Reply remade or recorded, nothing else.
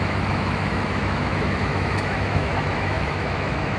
remade